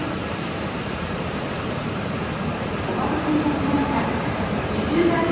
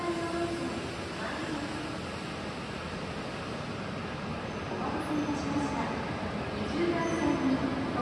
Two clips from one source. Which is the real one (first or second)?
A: second